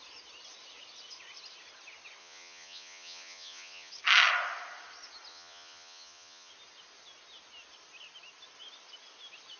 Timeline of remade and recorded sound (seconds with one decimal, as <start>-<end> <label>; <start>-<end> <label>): 0.0-2.2 recorded; 2.2-3.9 remade; 3.9-5.3 recorded; 5.3-6.5 remade; 6.5-9.6 recorded